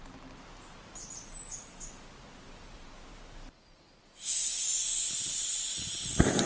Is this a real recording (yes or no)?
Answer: yes